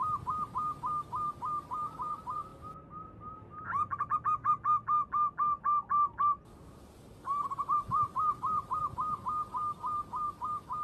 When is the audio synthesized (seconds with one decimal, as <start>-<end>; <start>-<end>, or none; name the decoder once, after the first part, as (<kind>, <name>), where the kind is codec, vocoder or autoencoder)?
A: 8.3-8.8 (vocoder, BigVGAN v2)